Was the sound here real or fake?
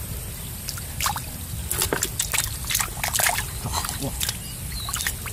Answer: real